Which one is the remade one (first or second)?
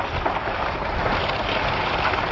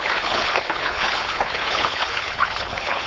second